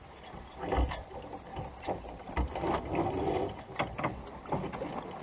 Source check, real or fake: real